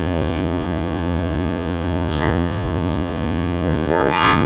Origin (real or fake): fake